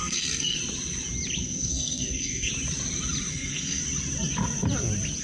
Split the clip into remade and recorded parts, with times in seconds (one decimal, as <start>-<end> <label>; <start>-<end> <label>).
0.0-0.6 remade; 0.6-1.4 recorded; 1.4-2.5 remade; 2.5-3.3 recorded; 3.3-3.8 remade; 3.8-5.2 recorded